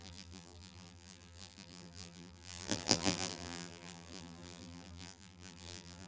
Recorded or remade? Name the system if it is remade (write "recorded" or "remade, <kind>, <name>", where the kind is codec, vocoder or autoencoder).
remade, vocoder, BigVGAN v2